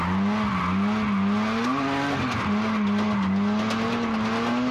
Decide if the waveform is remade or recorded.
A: recorded